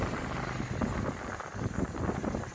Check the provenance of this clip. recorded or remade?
recorded